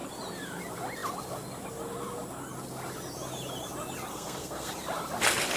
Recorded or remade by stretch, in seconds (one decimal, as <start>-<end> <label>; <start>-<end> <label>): 0.0-4.1 recorded; 4.1-4.7 remade; 4.7-5.6 recorded